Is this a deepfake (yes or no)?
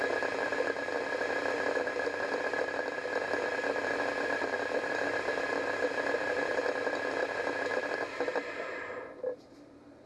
no